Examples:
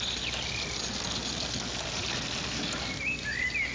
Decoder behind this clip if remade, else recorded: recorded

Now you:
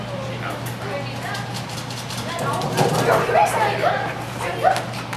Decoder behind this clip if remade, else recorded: recorded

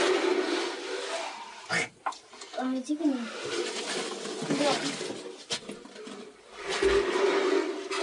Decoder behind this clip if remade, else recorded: recorded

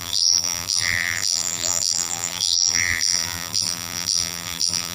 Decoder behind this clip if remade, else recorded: remade, vocoder, BigVGAN v2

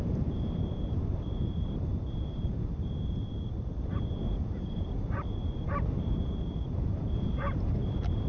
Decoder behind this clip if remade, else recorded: remade, vocoder, BigVGAN v2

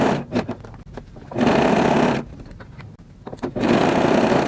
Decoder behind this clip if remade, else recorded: remade, vocoder, BigVGAN v2